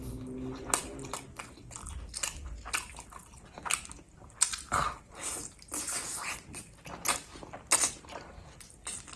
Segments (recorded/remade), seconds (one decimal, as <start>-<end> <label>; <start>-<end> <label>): 0.0-9.2 recorded

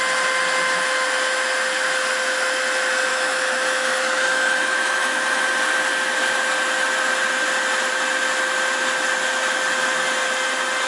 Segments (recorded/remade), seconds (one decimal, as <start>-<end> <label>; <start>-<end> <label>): 0.0-3.1 recorded; 3.1-5.4 remade; 5.4-10.9 recorded

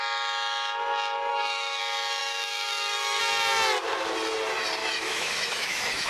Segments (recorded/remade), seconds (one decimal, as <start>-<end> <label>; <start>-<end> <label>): 0.0-1.3 recorded; 1.3-1.8 remade; 1.8-2.2 recorded; 2.2-3.2 remade; 3.2-4.8 recorded; 4.8-6.1 remade

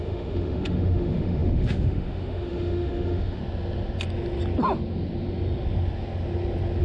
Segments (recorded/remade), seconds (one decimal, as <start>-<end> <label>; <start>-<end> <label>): 0.0-3.4 remade; 3.4-6.8 recorded

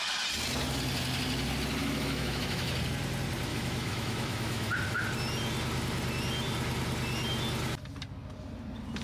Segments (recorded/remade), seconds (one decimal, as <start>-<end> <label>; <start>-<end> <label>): 0.0-1.8 recorded; 1.8-2.7 remade; 2.7-3.5 recorded; 3.5-4.7 remade; 4.7-9.0 recorded